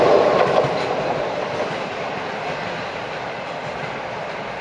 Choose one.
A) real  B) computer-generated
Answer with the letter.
A